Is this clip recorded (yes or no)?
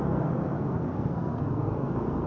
no